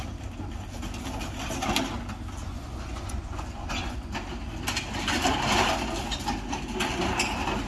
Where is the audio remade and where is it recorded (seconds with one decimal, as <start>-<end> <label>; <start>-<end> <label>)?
0.0-2.4 recorded; 2.4-4.1 remade; 4.1-7.7 recorded